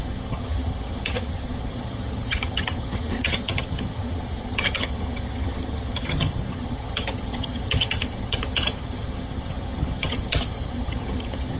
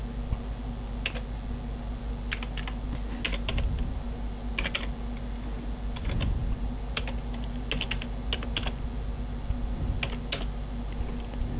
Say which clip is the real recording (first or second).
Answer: second